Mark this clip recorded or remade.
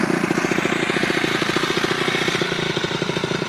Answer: recorded